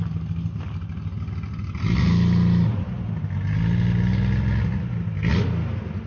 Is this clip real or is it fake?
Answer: real